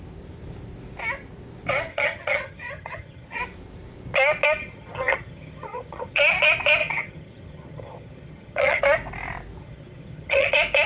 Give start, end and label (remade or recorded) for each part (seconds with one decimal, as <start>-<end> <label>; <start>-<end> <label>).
0.0-1.9 recorded; 1.9-3.4 remade; 3.4-4.6 recorded; 4.6-6.2 remade; 6.2-6.8 recorded; 6.8-8.8 remade; 8.8-9.6 recorded; 9.6-10.5 remade; 10.5-10.9 recorded